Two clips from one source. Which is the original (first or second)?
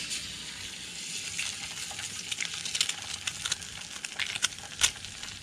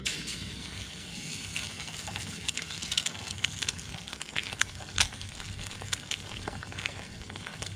first